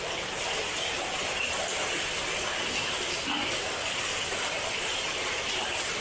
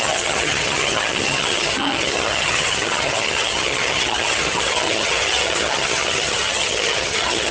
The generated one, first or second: second